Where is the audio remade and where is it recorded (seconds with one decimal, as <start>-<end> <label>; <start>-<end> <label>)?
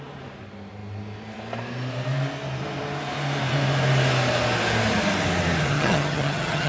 0.0-5.7 recorded; 5.7-6.7 remade